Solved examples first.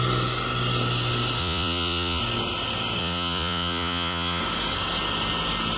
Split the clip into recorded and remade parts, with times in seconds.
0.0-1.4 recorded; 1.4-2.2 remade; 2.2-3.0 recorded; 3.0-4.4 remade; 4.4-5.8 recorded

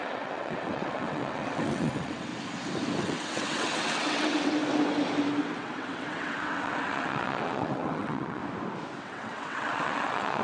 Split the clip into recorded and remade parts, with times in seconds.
0.0-2.3 remade; 2.3-3.0 recorded; 3.0-4.6 remade; 4.6-5.4 recorded; 5.4-8.4 remade; 8.4-9.0 recorded; 9.0-10.4 remade

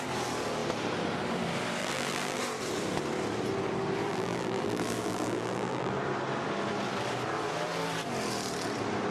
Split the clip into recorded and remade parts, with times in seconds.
0.0-1.8 recorded; 1.8-2.4 remade; 2.4-4.1 recorded; 4.1-5.9 remade; 5.9-9.1 recorded

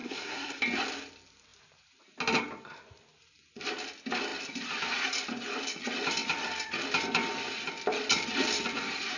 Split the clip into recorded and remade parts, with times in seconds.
0.0-0.6 remade; 0.6-9.2 recorded